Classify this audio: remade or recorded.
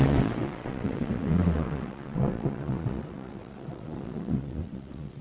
remade